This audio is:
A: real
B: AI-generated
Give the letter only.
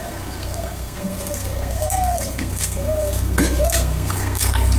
B